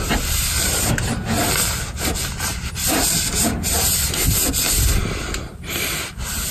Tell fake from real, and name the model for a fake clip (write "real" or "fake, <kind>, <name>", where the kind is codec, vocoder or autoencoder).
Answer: real